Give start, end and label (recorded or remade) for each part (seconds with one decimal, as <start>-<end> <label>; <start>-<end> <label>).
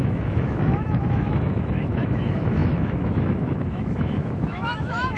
0.0-5.2 remade